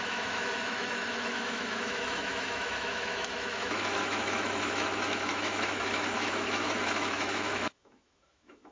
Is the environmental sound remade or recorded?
remade